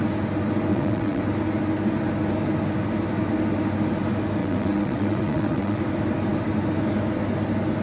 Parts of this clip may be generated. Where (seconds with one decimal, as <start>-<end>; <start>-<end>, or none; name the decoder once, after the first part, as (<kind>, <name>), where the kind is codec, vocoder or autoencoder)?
0.7-1.2 (vocoder, WaveNeXt); 4.4-5.8